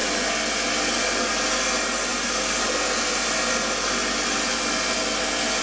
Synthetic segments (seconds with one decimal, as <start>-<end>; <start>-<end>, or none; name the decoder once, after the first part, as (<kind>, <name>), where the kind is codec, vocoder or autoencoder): none